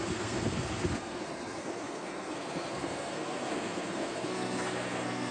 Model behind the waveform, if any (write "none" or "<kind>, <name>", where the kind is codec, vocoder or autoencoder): codec, SNAC